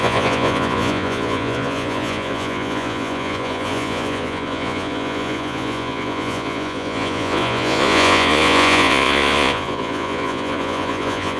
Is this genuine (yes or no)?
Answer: no